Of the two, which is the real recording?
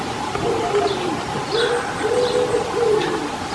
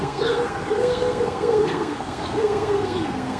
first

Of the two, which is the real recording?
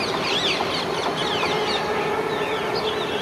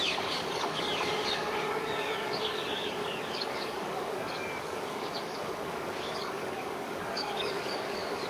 first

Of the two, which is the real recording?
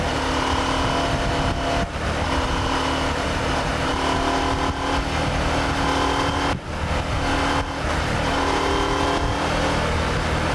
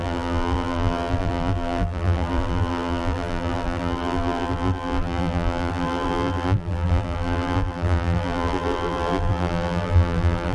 first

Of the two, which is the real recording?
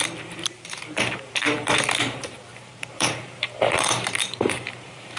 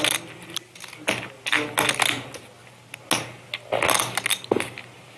second